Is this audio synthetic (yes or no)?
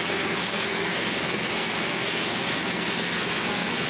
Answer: yes